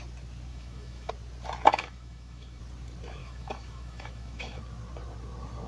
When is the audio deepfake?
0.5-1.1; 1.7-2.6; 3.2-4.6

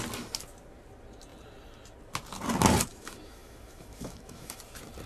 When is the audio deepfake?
2.9-4.6

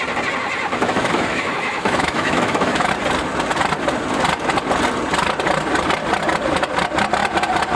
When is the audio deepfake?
0.7-2.9

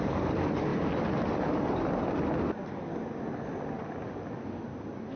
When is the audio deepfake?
none